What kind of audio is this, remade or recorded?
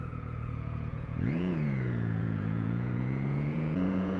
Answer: remade